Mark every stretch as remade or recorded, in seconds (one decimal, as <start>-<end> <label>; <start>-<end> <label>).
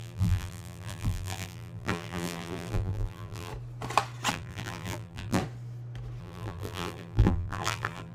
0.0-3.5 remade; 3.5-4.3 recorded; 4.3-5.4 remade; 5.4-6.2 recorded; 6.2-8.1 remade